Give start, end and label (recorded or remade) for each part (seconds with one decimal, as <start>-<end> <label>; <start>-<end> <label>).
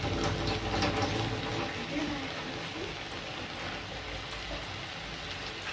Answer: 0.0-5.7 recorded